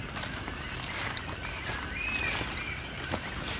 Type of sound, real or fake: real